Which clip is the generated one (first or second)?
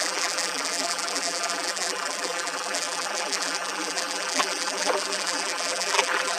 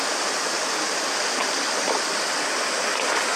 first